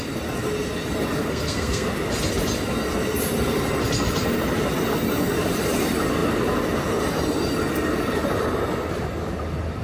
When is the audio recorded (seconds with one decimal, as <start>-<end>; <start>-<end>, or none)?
0.0-1.2; 1.9-9.8